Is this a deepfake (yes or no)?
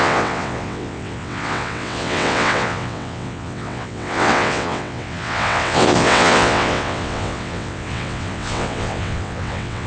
yes